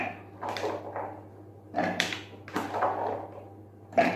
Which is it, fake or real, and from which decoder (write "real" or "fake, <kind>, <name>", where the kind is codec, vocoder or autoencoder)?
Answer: real